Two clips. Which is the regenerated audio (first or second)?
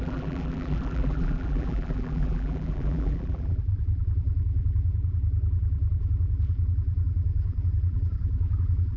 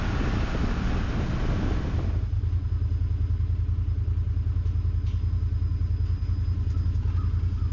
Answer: first